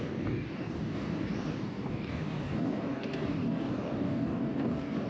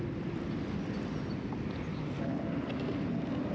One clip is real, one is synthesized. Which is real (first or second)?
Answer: second